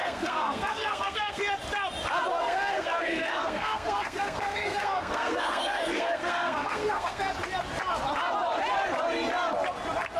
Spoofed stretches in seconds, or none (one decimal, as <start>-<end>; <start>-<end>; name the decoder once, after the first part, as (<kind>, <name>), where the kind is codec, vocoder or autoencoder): 0.0-1.4 (codec, SNAC); 2.3-7.2